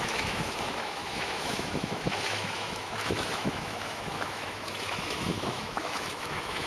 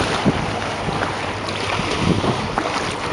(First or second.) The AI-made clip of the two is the first